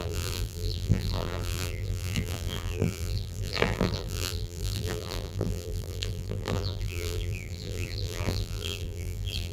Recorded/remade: remade